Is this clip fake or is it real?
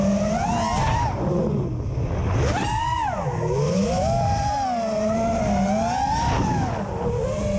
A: real